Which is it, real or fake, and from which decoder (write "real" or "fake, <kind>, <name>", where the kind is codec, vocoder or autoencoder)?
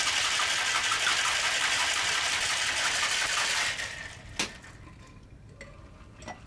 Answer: real